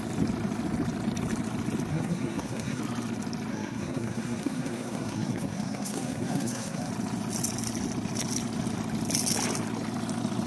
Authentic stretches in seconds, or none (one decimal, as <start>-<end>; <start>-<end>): 0.0-1.9; 2.8-3.5; 6.9-10.5